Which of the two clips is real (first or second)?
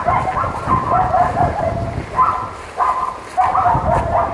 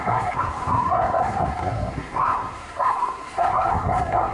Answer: first